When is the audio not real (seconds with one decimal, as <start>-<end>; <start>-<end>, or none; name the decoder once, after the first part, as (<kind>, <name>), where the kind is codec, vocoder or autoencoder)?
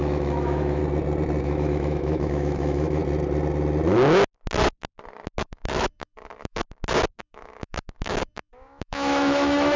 0.0-0.8 (autoencoder, DAC-VAE); 1.4-3.0; 5.4-6.6; 7.2-9.8